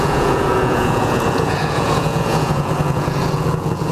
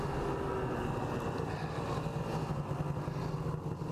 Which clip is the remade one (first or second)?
first